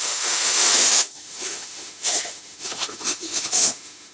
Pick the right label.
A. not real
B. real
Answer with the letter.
A